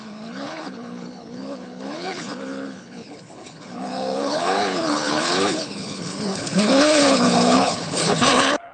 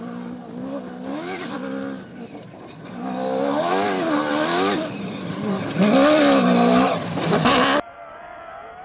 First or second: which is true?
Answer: second